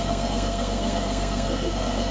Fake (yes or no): yes